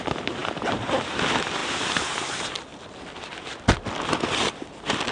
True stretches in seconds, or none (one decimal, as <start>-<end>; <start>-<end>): 0.0-0.4; 0.9-5.1